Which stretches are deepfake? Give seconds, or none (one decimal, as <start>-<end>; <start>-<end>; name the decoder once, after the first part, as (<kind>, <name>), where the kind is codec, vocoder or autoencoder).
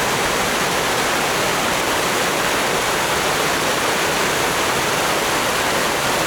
1.5-2.3 (vocoder, BigVGAN v2)